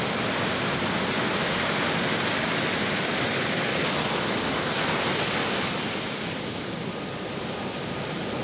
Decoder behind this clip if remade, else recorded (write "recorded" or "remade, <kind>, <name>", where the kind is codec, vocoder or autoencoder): recorded